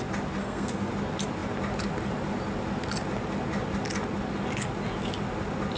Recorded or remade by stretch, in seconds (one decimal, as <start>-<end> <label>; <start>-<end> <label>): 0.0-0.4 recorded; 0.4-0.9 remade; 0.9-5.8 recorded